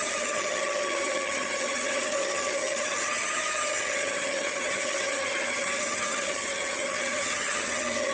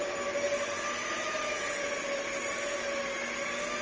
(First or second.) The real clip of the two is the second